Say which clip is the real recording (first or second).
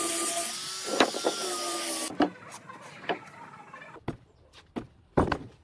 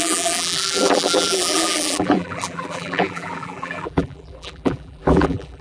first